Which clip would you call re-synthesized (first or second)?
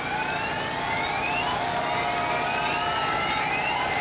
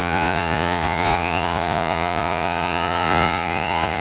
second